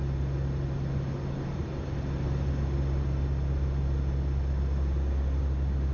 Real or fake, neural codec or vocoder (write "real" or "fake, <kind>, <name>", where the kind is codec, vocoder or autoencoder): real